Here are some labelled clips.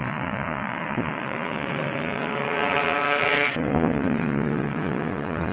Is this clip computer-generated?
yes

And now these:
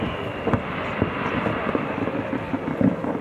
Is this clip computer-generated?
no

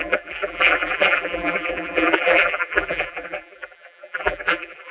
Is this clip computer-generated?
yes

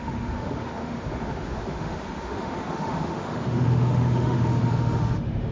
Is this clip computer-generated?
yes